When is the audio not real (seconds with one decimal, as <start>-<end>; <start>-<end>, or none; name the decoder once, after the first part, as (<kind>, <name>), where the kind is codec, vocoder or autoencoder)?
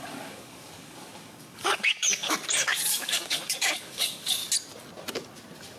0.0-4.4 (codec, DAC)